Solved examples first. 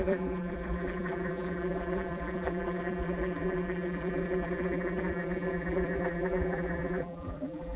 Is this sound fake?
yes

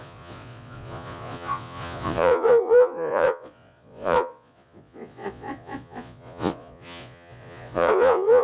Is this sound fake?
yes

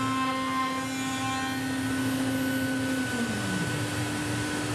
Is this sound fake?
no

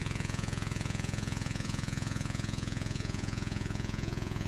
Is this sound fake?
yes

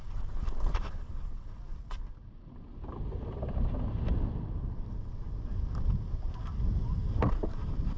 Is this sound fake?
no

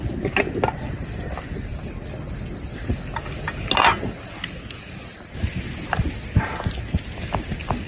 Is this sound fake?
no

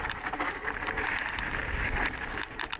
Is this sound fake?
no